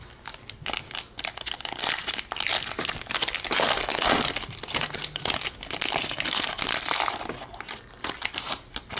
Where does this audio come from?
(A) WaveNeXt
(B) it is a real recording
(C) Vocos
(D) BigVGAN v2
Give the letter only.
B